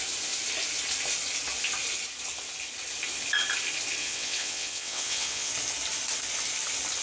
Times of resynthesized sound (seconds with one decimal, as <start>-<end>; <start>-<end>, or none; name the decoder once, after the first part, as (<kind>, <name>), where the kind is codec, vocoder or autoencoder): 4.0-5.5 (vocoder, WaveNeXt)